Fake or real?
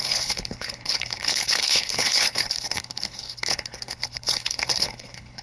fake